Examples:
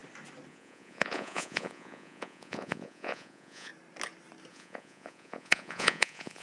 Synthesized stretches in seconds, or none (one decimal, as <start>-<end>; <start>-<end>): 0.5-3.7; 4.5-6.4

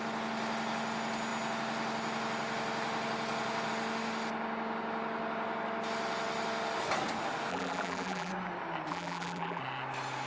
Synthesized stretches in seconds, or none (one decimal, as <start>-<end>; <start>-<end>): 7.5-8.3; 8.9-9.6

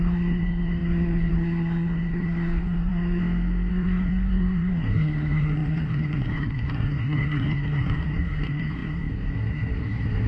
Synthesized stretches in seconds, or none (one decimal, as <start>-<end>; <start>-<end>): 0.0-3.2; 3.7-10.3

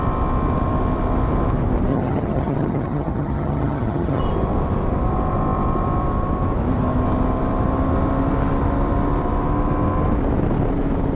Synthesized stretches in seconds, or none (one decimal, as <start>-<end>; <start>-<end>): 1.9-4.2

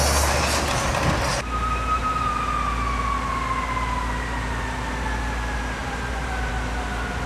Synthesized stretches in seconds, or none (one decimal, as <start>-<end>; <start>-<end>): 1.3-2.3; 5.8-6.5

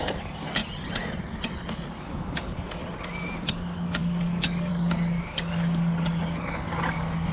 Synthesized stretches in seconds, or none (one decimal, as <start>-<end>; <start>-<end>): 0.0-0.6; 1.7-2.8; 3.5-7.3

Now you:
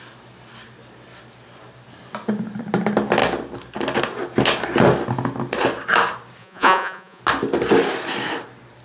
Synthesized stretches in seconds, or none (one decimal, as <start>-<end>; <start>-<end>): 6.4-7.2